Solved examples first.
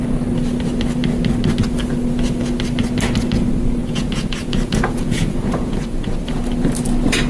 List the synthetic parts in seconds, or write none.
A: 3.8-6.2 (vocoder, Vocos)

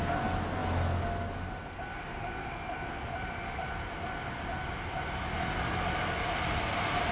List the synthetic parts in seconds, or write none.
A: none

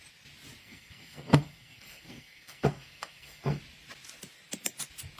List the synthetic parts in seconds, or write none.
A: 0.6-3.6 (codec, SNAC)

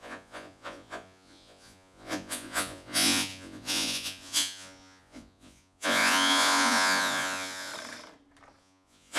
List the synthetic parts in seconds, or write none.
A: 0.0-7.7 (vocoder, Vocos); 8.6-9.2

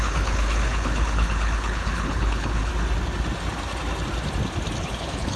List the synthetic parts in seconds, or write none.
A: 0.0-2.7 (codec, HILCodec); 4.8-5.4